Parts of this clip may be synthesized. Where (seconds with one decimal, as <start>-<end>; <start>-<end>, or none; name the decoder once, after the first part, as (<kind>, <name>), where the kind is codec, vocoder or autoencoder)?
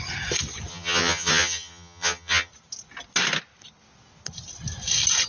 0.7-2.5 (vocoder, HiFi-GAN)